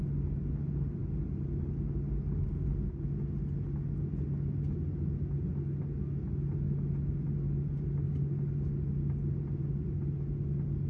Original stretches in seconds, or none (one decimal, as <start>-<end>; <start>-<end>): 0.0-10.9